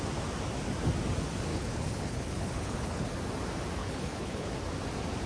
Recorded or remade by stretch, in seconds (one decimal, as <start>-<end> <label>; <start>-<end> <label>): 0.0-1.5 recorded; 1.5-3.1 remade; 3.1-3.8 recorded; 3.8-4.5 remade; 4.5-5.3 recorded